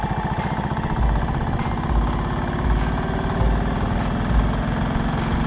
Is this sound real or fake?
real